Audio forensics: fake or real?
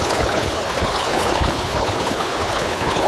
fake